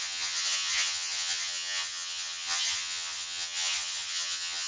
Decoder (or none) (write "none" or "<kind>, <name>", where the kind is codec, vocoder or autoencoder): vocoder, HiFi-GAN